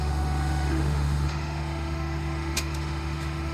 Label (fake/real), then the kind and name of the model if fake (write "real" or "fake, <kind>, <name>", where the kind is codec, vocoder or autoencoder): fake, autoencoder, DAC-VAE